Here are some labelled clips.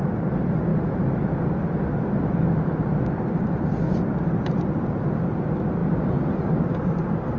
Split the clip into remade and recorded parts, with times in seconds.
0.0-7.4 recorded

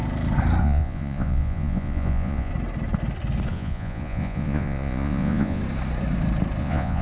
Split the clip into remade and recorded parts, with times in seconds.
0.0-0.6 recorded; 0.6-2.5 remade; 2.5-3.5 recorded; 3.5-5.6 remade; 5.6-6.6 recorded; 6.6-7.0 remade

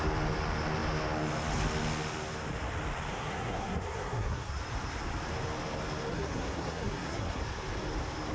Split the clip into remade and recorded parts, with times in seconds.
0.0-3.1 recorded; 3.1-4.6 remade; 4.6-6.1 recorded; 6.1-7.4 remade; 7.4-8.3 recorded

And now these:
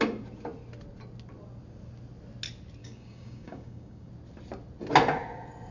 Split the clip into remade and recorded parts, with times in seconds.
0.0-2.8 recorded; 2.8-4.1 remade; 4.1-5.7 recorded

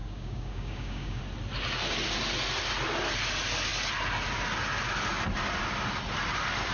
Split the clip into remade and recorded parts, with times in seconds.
0.0-1.2 remade; 1.2-6.7 recorded

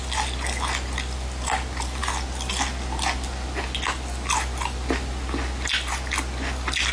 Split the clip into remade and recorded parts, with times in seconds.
0.0-6.9 recorded

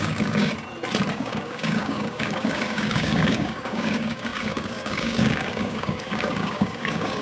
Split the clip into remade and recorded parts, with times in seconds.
0.0-0.5 remade; 0.5-1.1 recorded; 1.1-7.2 remade